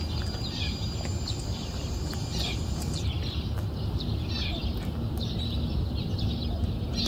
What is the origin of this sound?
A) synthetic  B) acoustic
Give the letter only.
B